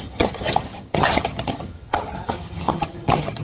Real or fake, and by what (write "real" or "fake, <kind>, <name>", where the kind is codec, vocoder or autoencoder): fake, vocoder, HiFi-GAN